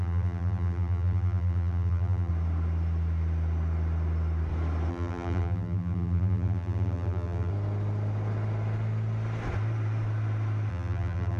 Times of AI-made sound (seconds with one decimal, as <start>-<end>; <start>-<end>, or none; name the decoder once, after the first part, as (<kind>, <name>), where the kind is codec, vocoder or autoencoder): 0.0-2.3 (vocoder, BigVGAN v2); 4.9-7.5; 10.7-11.4